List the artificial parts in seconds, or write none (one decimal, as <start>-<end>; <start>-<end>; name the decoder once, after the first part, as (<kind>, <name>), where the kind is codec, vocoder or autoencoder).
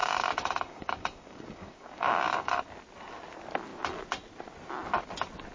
0.0-2.6 (codec, DAC)